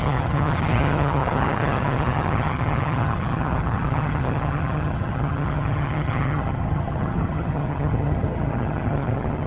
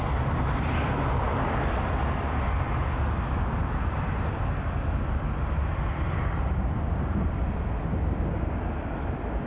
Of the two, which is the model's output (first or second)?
first